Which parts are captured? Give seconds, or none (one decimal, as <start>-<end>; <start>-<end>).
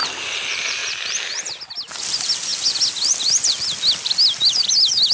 0.0-5.1